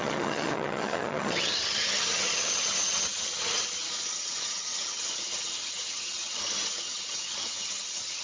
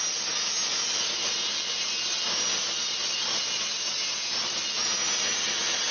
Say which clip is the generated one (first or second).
first